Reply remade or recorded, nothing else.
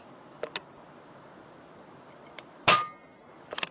recorded